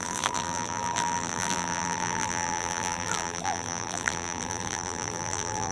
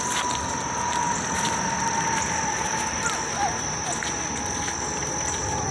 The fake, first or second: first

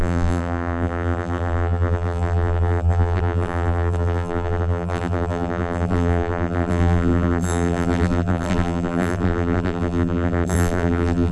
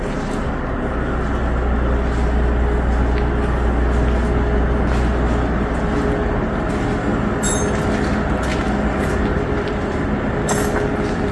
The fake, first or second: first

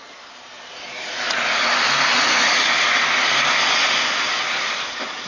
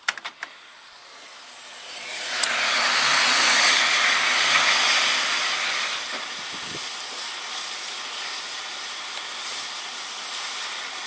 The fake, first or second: second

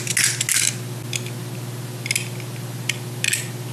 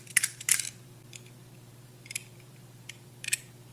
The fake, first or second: second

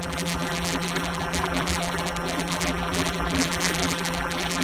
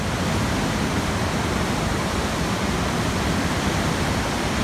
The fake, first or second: first